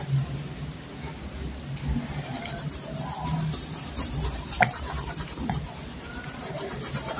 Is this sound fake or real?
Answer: fake